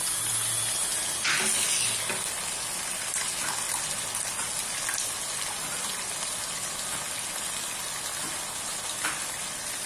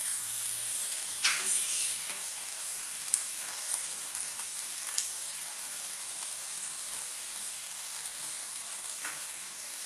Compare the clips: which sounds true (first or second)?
first